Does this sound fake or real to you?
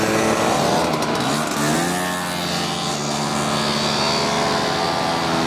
real